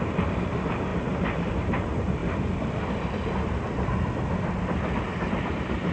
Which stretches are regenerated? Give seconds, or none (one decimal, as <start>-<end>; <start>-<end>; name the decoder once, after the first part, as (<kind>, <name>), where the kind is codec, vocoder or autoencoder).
0.0-2.2 (vocoder, BigVGAN v2); 5.3-5.9